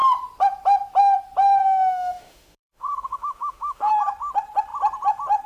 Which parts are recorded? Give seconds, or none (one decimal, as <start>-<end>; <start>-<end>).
0.0-1.6; 3.9-5.5